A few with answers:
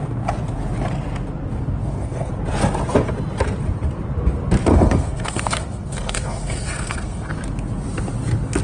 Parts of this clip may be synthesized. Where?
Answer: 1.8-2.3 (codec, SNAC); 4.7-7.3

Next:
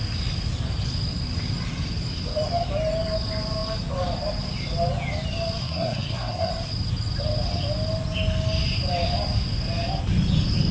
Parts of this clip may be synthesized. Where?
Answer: 5.6-6.5 (codec, SNAC)

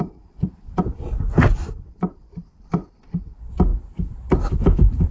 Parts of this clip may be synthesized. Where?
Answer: 0.0-3.7 (vocoder, BigVGAN v2); 4.3-5.1